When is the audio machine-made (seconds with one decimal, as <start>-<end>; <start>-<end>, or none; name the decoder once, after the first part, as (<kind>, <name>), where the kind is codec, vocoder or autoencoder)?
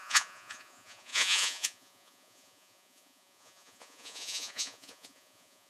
0.0-5.7 (vocoder, Vocos)